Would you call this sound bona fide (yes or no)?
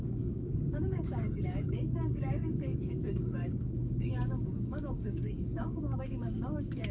no